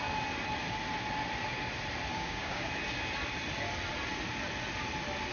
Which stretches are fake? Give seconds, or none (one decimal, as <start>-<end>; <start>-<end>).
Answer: 2.1-2.7